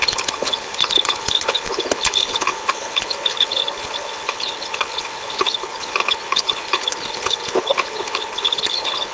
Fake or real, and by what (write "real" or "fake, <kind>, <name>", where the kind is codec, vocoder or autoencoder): fake, codec, HILCodec